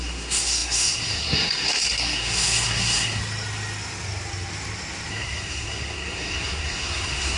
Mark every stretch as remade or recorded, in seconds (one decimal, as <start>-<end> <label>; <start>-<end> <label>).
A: 0.0-3.2 remade; 3.2-5.1 recorded; 5.1-7.4 remade